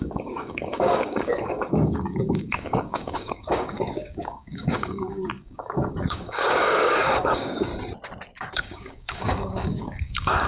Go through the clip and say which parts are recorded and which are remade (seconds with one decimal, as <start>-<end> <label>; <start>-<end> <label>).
0.0-7.7 remade; 7.7-8.4 recorded; 8.4-10.5 remade